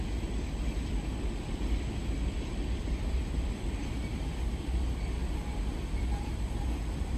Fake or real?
real